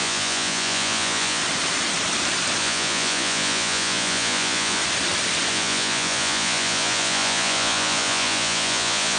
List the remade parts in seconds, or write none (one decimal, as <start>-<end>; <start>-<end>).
0.0-1.4; 2.6-4.8; 5.5-9.2